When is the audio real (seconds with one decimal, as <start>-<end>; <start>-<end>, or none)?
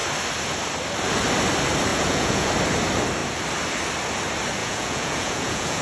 0.0-1.9; 2.5-4.6